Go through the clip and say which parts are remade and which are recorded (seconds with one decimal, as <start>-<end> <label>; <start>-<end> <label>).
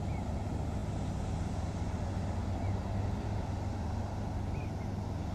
0.0-5.3 recorded